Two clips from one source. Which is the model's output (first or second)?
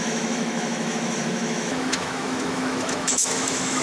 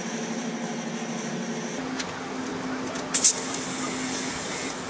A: first